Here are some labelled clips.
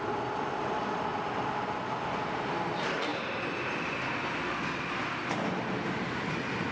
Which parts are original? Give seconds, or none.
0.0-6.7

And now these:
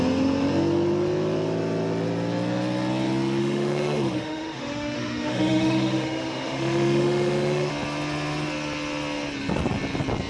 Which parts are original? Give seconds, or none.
0.0-3.4; 7.7-10.3

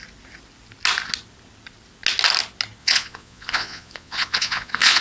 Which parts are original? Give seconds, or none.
0.0-2.8

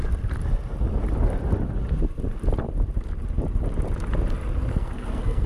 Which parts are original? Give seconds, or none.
0.0-4.7

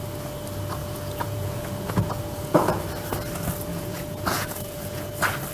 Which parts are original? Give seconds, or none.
0.0-0.8; 2.8-3.7; 5.1-5.5

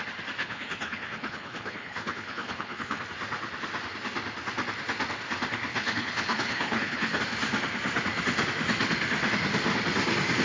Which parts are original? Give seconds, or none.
0.0-0.4; 3.0-5.7; 7.2-10.4

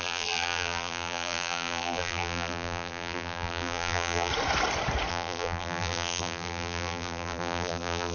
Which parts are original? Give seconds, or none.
4.3-5.1